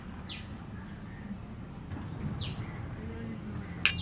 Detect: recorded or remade recorded